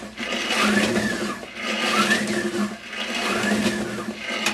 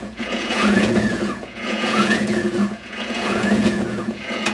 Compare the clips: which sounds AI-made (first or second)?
second